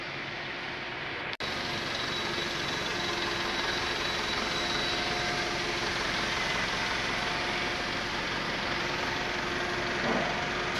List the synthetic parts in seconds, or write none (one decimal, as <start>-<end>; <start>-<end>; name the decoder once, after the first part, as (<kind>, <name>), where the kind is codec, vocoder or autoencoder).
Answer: none